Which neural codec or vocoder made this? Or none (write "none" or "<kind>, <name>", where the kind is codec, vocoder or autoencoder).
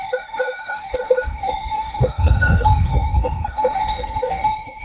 autoencoder, DAC-VAE